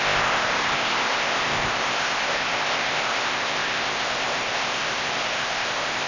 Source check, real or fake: fake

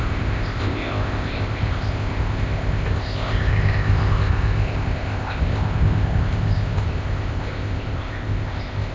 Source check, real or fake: fake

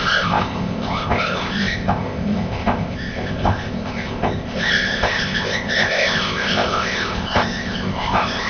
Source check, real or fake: fake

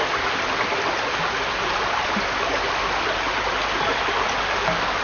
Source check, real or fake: real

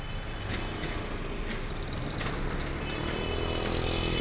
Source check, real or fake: real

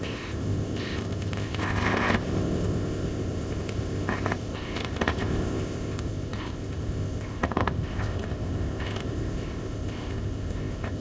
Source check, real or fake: fake